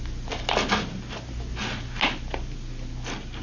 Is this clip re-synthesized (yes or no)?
no